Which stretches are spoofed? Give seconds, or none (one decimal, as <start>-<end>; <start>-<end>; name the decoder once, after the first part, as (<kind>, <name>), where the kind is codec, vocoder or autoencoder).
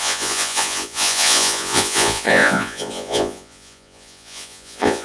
0.0-5.0 (vocoder, Vocos)